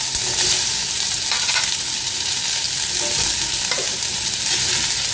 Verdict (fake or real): real